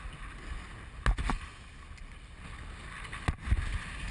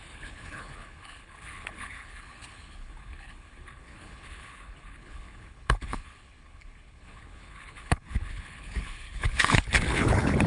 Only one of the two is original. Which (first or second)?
first